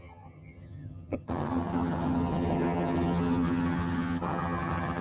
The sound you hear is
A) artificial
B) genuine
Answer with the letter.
A